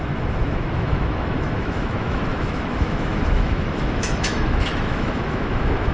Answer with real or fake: fake